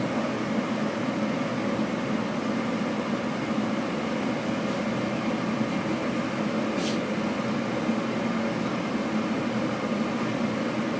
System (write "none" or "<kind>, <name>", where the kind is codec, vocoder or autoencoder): none